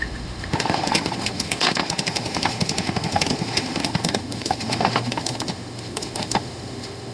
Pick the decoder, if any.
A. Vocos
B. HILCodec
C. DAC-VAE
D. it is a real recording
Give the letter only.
C